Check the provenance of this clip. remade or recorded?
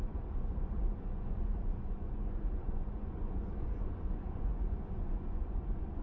remade